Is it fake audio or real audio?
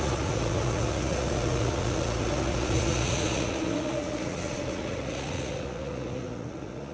fake